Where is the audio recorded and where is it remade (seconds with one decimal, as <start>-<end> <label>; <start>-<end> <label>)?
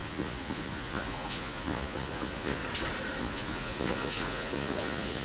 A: 0.0-2.6 remade; 2.6-3.2 recorded; 3.2-5.2 remade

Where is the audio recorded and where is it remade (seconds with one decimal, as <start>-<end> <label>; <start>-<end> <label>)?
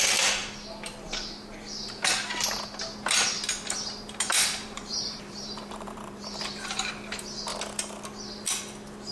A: 0.0-4.3 recorded; 4.3-6.9 remade; 6.9-9.1 recorded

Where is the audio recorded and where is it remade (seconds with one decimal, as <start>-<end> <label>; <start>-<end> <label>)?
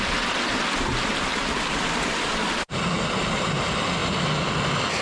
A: 0.0-5.0 recorded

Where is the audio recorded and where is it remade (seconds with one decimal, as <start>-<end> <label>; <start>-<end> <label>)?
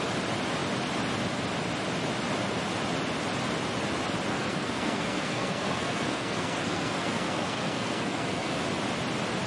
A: 0.0-4.3 recorded; 4.3-8.6 remade; 8.6-9.5 recorded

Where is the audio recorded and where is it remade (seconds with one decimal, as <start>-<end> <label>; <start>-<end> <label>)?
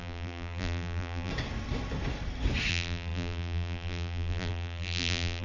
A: 0.0-1.3 remade; 1.3-2.7 recorded; 2.7-5.4 remade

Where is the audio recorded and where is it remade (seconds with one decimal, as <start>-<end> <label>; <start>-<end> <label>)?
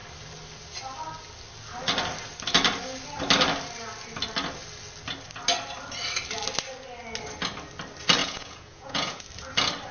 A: 0.0-8.2 recorded; 8.2-9.2 remade; 9.2-9.9 recorded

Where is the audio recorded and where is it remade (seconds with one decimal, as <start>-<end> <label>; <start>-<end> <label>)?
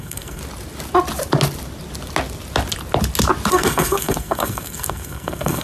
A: 0.0-0.4 remade; 0.4-3.5 recorded; 3.5-5.6 remade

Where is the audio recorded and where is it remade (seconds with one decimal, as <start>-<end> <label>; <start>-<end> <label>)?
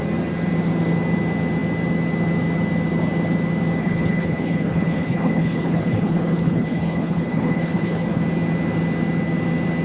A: 0.0-3.8 recorded; 3.8-8.2 remade; 8.2-9.8 recorded